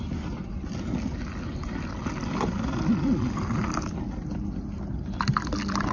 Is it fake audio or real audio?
real